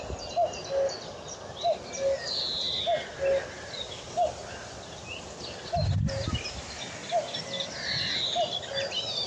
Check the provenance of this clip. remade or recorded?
recorded